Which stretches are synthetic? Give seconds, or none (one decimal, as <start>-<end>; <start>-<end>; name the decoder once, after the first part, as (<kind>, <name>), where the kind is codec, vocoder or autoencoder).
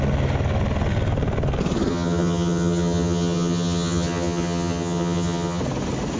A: 1.9-5.6 (vocoder, HiFi-GAN)